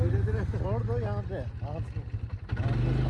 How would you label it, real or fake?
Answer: real